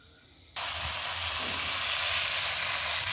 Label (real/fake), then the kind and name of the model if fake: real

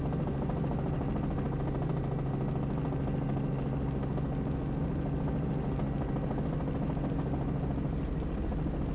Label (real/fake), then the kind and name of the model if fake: real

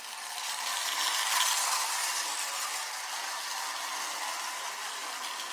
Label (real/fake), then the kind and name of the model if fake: real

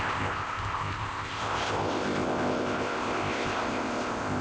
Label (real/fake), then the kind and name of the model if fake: fake, codec, ZipCodec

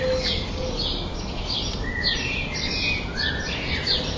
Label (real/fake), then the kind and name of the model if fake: real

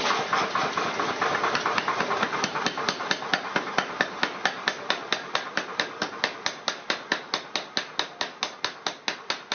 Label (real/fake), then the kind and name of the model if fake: real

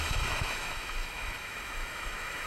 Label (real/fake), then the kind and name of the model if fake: fake, autoencoder, DAC-VAE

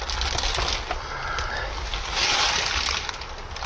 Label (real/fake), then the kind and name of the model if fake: real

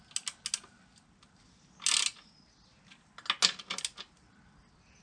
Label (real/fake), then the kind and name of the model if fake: real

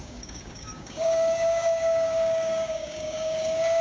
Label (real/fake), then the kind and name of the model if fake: fake, codec, DAC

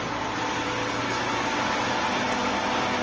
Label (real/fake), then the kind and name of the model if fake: real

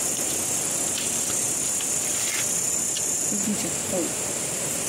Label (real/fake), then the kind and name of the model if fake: real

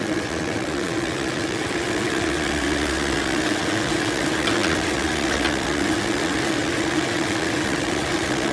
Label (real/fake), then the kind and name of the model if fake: fake, vocoder, WaveNeXt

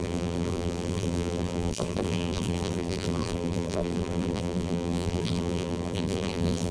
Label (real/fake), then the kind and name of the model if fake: fake, vocoder, BigVGAN v2